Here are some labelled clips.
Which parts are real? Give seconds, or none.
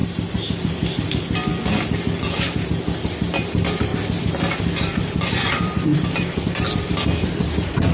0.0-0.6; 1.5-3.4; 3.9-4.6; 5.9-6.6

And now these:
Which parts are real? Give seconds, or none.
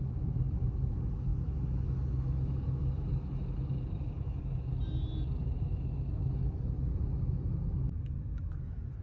4.7-5.4